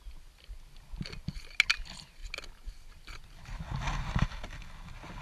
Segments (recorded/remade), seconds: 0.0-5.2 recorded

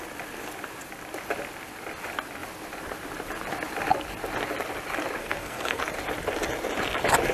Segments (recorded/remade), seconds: 0.0-5.2 recorded; 5.2-5.8 remade; 5.8-7.3 recorded

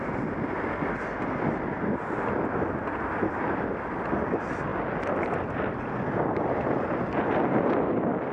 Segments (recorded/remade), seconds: 0.0-8.3 recorded